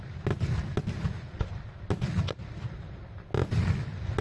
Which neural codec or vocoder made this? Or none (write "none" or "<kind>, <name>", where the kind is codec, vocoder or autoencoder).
none